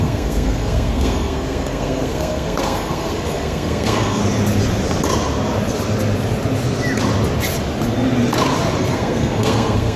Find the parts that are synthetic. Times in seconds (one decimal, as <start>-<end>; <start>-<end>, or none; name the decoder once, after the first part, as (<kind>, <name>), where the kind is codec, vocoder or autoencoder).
0.0-4.2 (codec, SNAC); 8.8-10.0

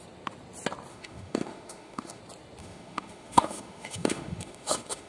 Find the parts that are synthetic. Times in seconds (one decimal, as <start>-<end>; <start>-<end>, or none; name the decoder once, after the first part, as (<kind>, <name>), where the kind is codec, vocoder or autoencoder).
0.9-2.2 (autoencoder, DAC-VAE); 2.6-5.1